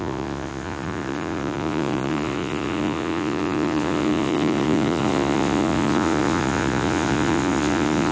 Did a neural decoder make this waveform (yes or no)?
yes